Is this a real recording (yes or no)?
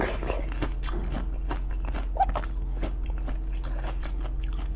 yes